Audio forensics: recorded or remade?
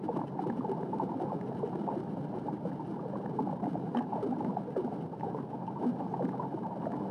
remade